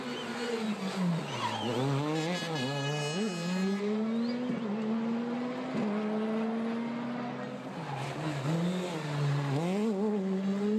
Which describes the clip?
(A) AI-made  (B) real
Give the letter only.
B